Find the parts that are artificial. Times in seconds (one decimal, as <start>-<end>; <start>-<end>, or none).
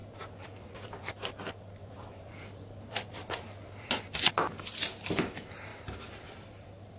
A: 0.0-1.1; 1.8-3.9; 5.7-7.0